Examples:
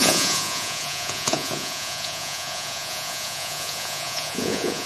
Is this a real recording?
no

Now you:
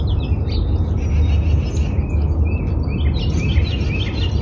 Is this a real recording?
yes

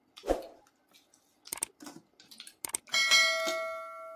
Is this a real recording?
yes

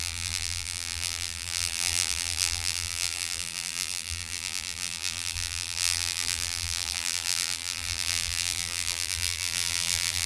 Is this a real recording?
no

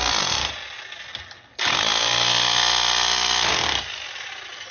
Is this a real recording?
yes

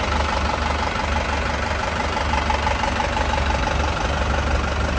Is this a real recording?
yes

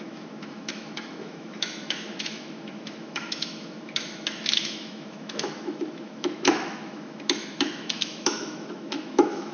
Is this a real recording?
no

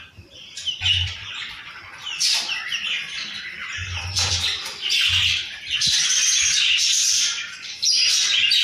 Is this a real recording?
yes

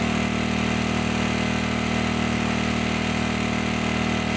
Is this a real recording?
yes